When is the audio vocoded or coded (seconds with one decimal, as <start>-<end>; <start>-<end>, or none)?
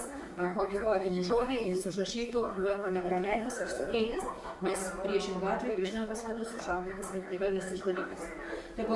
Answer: 0.0-4.8; 5.7-8.2